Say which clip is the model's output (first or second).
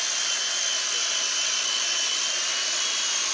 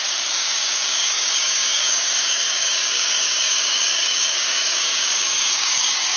second